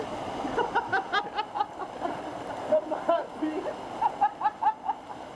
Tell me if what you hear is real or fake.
real